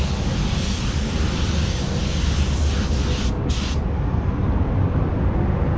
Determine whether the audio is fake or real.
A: real